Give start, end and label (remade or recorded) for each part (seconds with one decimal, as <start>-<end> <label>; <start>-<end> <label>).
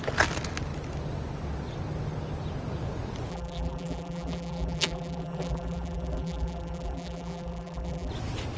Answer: 0.0-3.3 recorded; 3.3-8.1 remade; 8.1-8.6 recorded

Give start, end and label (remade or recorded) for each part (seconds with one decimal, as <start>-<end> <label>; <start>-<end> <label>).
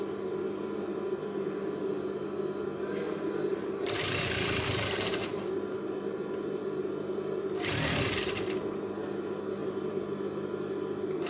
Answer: 0.0-3.5 recorded; 3.5-5.4 remade; 5.4-9.6 recorded; 9.6-10.1 remade; 10.1-11.3 recorded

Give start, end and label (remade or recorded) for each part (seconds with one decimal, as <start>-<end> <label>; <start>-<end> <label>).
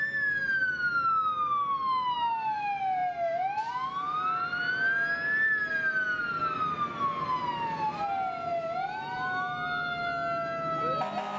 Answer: 0.0-11.4 recorded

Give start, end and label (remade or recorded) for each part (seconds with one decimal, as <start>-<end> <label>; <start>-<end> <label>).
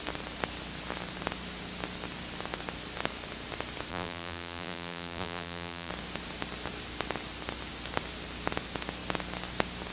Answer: 0.0-3.9 recorded; 3.9-5.9 remade; 5.9-9.9 recorded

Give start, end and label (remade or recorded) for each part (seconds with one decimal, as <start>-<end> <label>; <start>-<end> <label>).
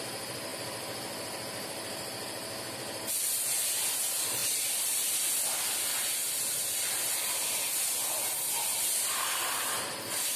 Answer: 0.0-10.4 recorded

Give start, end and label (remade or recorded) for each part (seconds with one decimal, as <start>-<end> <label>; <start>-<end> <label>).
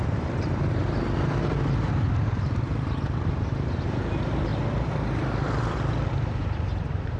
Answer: 0.0-0.8 remade; 0.8-2.2 recorded; 2.2-4.5 remade; 4.5-6.1 recorded; 6.1-7.2 remade